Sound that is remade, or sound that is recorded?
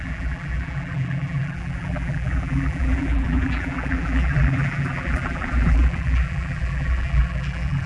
remade